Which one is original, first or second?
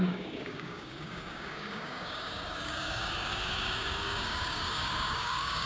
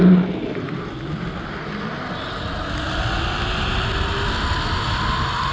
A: second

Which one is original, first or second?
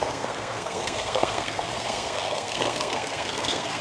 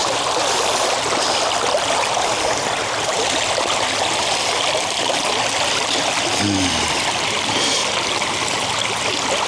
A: second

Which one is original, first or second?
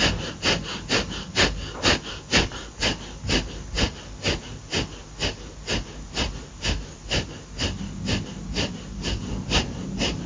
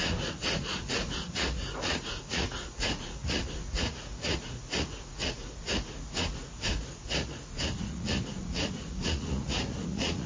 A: first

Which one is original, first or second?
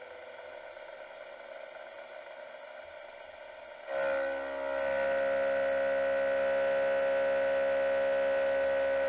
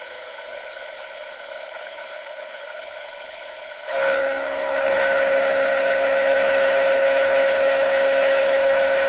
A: first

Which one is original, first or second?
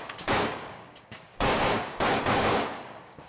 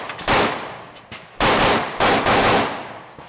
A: second